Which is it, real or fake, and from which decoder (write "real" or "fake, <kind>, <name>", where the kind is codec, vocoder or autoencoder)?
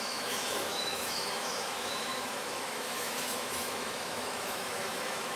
fake, autoencoder, DAC-VAE